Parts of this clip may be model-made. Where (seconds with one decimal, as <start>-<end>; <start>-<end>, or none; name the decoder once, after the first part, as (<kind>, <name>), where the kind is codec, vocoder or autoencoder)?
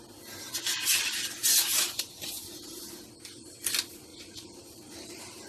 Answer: 1.7-2.8 (vocoder, BigVGAN v2); 4.1-5.5